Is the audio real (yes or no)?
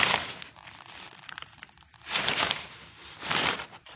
yes